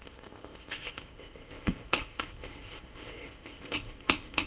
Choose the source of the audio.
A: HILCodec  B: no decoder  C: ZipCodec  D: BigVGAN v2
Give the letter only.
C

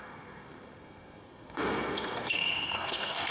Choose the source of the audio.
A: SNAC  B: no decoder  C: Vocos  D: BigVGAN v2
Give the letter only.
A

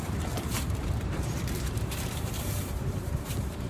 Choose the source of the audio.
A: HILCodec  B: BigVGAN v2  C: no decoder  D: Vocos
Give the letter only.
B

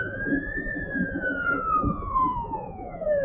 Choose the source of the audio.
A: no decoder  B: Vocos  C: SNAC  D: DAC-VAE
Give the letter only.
B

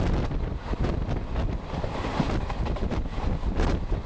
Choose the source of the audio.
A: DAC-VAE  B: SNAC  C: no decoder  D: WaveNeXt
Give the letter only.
C